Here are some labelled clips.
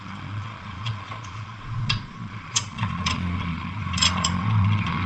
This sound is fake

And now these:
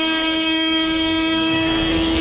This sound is fake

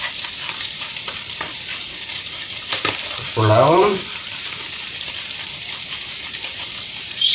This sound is fake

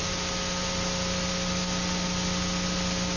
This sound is real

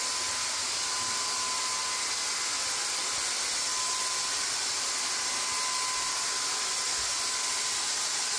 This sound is real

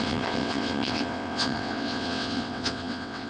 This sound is fake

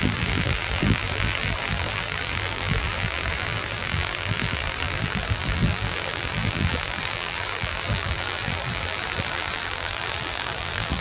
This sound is fake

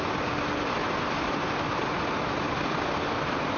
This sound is real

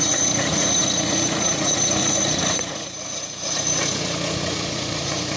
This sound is fake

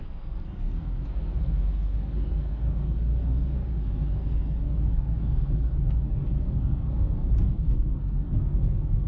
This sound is fake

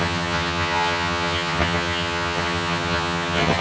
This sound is fake